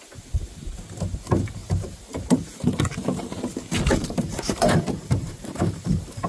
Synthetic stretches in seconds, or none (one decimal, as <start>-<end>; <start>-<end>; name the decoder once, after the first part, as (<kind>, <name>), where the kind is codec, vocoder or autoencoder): 1.6-2.2 (vocoder, BigVGAN v2); 3.9-6.3